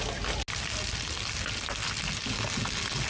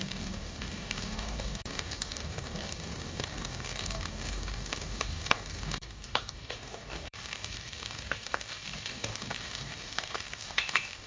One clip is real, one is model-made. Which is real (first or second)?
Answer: first